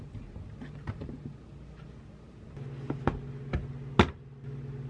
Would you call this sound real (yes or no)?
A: yes